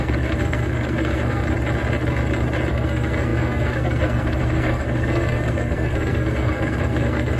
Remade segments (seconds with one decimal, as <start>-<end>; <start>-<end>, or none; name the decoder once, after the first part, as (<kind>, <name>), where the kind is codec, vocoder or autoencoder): 0.0-1.4 (codec, SNAC); 2.7-7.4

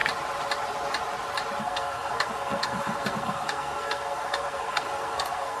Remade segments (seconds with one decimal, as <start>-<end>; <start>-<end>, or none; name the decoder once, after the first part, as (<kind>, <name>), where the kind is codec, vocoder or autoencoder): 1.6-5.6 (codec, SNAC)